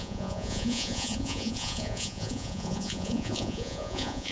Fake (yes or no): yes